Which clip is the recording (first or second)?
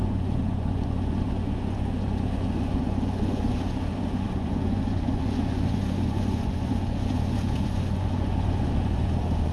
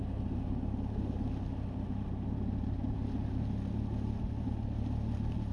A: second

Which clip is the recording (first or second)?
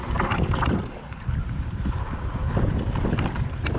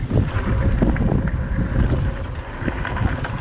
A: second